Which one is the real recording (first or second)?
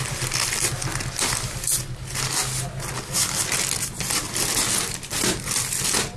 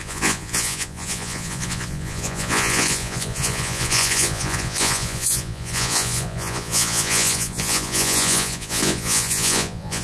first